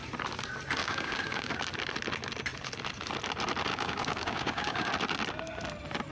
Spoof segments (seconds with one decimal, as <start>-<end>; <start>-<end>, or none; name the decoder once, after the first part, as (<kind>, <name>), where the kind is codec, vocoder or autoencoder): 0.8-1.5 (codec, DAC); 3.7-4.9